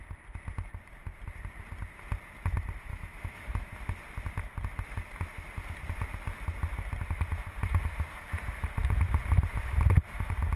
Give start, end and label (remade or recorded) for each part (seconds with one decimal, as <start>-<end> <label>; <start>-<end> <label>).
0.0-2.9 recorded; 2.9-3.7 remade; 3.7-10.6 recorded